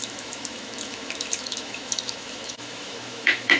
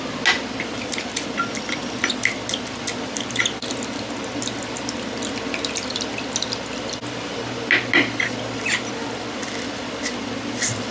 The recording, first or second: second